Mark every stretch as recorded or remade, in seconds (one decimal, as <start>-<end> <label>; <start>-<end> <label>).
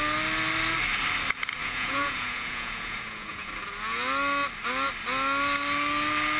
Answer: 0.0-1.6 recorded; 1.6-3.5 remade; 3.5-6.4 recorded